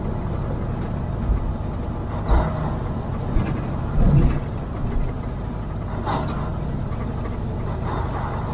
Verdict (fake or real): real